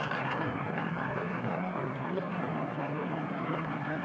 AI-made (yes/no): yes